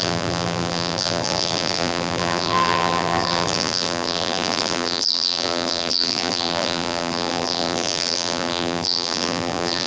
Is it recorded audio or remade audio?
remade